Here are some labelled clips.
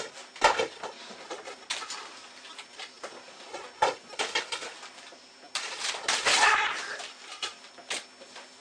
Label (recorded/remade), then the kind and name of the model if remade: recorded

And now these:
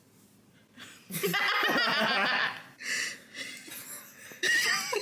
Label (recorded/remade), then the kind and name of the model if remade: recorded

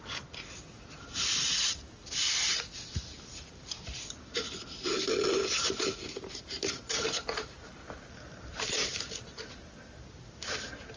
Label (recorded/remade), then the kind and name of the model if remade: recorded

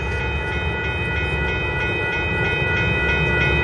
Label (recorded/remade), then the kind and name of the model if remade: recorded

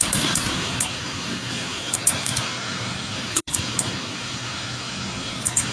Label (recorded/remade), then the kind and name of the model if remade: remade, codec, SNAC